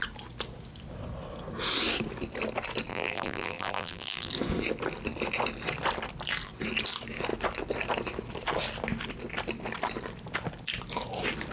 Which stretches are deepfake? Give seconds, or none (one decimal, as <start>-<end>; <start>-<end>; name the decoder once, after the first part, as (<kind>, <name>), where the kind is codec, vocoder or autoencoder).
2.9-4.3 (vocoder, BigVGAN v2)